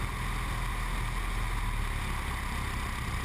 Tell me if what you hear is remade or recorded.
recorded